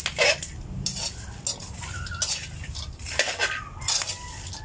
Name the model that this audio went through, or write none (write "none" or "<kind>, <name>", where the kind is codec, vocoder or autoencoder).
none